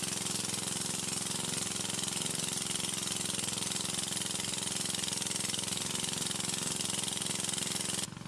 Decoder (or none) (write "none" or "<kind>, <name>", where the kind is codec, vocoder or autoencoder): none